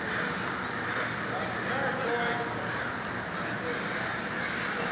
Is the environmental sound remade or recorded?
recorded